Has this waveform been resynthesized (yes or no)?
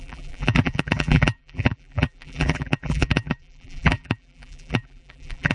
yes